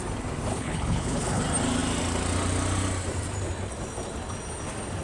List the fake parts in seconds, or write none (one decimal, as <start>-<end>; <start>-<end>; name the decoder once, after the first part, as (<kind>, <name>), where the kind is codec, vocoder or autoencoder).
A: 0.5-1.4 (codec, HILCodec)